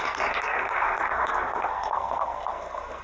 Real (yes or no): no